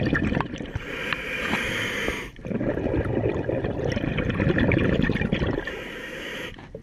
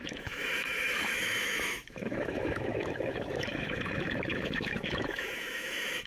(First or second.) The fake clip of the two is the second